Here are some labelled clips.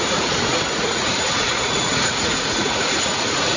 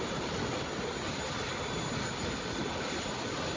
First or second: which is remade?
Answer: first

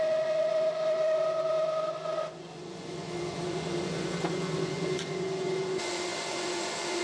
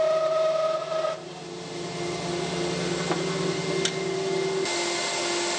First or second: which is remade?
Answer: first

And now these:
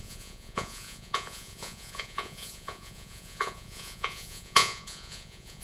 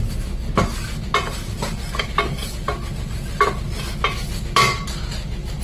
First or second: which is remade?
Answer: first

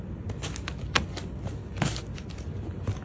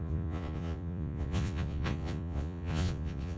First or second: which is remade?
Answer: second